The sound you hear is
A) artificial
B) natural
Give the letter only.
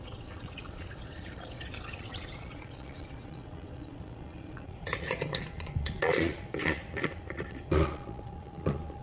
A